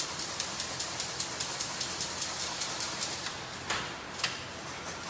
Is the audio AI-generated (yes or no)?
no